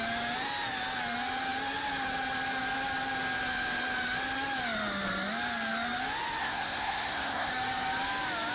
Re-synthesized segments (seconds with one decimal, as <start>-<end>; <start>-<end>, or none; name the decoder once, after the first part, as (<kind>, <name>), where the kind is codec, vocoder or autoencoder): 6.4-7.5 (codec, SNAC)